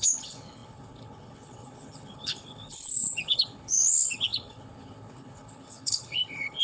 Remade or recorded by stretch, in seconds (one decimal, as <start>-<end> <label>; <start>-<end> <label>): 0.0-6.6 remade